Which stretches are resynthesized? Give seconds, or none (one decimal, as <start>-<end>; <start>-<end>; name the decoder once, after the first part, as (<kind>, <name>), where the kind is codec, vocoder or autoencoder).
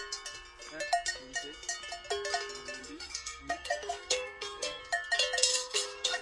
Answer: 2.8-4.8 (codec, SNAC); 5.5-6.2